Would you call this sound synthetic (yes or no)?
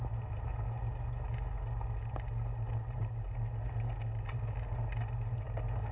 no